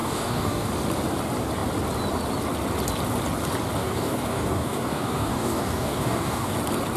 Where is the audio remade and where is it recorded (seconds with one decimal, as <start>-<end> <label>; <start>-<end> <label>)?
0.0-0.7 remade; 0.7-3.8 recorded; 3.8-6.5 remade; 6.5-7.0 recorded